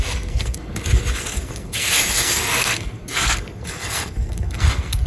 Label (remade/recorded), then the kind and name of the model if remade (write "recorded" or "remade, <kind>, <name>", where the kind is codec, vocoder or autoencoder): remade, codec, SNAC